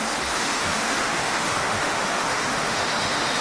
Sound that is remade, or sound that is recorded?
remade